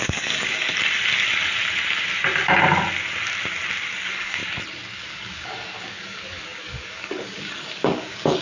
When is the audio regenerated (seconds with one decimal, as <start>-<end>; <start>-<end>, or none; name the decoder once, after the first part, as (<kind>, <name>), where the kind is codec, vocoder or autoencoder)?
0.0-0.7 (codec, DAC); 3.9-4.4; 5.0-8.4